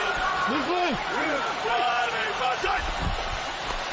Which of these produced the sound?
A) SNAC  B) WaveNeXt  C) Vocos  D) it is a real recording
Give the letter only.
C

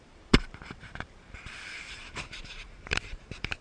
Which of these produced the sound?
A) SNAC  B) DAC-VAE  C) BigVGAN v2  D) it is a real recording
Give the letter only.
C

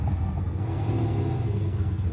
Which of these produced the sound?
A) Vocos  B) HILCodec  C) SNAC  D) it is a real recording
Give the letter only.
C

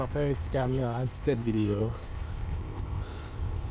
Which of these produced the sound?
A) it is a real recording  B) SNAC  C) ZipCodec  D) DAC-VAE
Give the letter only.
C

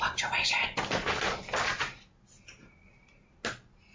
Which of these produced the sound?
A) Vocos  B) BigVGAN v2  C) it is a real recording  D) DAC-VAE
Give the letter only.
C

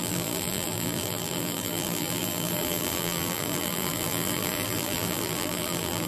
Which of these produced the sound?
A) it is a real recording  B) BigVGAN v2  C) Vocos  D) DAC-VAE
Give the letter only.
B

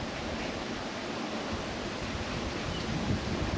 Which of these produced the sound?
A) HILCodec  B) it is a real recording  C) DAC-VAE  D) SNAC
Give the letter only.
B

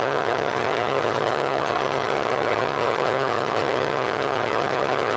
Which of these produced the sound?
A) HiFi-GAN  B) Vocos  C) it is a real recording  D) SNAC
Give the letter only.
A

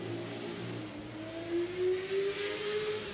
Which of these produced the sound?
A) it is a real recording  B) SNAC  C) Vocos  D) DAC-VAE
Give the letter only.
A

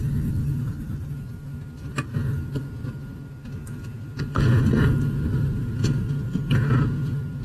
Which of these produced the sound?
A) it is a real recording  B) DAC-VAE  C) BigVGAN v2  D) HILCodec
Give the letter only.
A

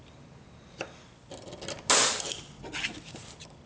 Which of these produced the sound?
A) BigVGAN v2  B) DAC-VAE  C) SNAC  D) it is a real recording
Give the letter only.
D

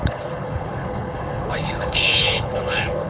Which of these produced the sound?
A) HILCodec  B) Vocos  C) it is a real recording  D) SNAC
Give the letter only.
A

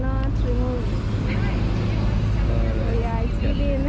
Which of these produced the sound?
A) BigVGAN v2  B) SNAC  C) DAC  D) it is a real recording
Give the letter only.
D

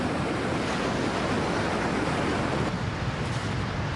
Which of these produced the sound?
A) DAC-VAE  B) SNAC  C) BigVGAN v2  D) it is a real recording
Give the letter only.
D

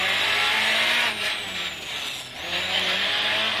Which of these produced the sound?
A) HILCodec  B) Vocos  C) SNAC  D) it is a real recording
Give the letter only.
D